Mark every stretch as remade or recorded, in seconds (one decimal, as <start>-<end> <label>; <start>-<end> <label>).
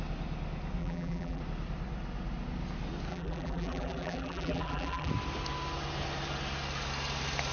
0.0-0.8 recorded; 0.8-1.4 remade; 1.4-3.1 recorded; 3.1-5.1 remade; 5.1-7.5 recorded